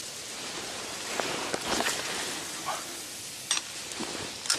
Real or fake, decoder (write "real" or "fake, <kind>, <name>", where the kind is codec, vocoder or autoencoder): real